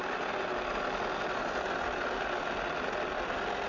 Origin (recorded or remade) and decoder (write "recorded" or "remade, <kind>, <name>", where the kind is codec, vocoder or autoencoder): recorded